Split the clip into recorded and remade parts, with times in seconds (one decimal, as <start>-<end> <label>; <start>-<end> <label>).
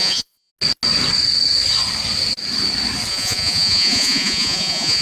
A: 0.0-0.5 remade; 0.5-3.1 recorded; 3.1-5.0 remade